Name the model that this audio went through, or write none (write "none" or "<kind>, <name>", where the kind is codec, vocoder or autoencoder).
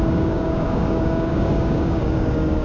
codec, DAC